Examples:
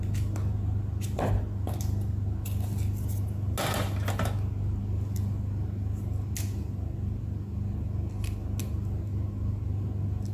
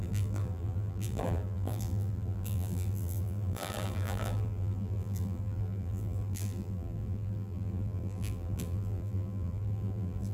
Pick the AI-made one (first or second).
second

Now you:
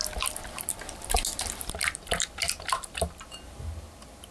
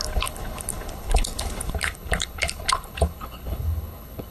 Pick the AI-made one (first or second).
second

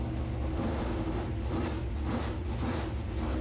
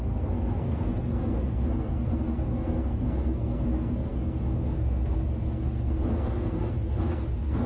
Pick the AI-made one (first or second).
second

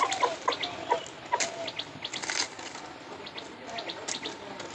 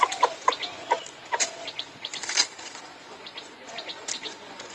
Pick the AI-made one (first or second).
second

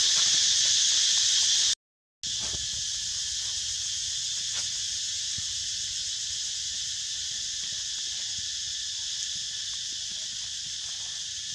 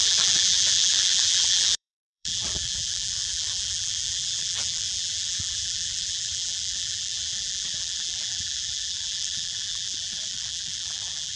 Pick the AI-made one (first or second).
second